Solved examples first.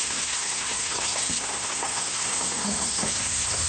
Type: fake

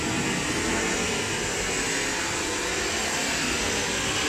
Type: real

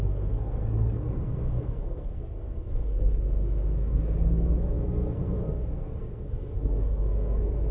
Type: fake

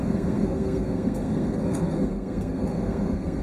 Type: fake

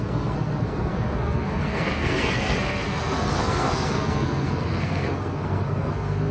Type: fake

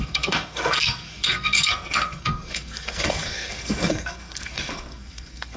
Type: fake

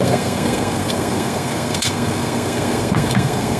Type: fake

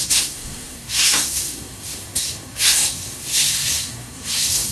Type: fake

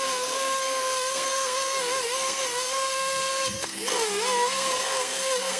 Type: fake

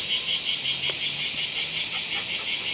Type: real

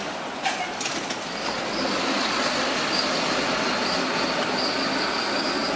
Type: real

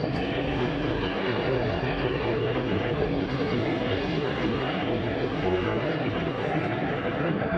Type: fake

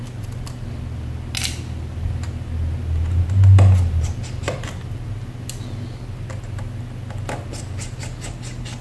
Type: real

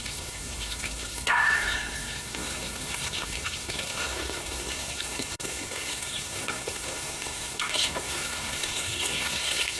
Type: fake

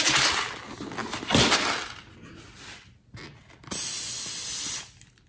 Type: real